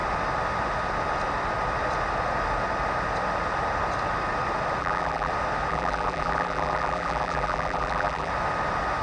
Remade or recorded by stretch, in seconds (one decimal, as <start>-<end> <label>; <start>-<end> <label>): 0.0-4.8 recorded; 4.8-5.3 remade; 5.3-5.7 recorded; 5.7-8.3 remade; 8.3-9.0 recorded